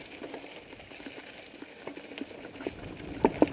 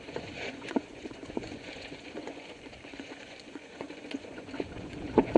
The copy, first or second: second